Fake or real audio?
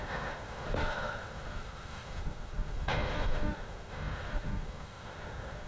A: fake